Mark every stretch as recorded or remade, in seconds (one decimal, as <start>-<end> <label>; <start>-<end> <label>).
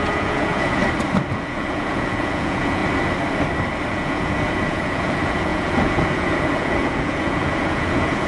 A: 0.0-0.8 remade; 0.8-1.3 recorded; 1.3-2.8 remade; 2.8-3.9 recorded; 3.9-8.3 remade